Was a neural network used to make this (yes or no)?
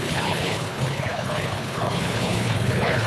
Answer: yes